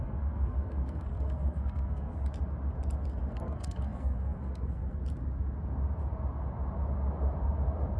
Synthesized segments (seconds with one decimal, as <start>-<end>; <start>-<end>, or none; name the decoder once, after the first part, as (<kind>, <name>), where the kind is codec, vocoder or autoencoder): 0.0-2.1 (codec, SNAC); 3.3-5.0